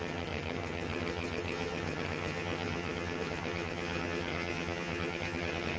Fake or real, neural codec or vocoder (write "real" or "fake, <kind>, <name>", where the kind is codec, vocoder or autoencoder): fake, vocoder, HiFi-GAN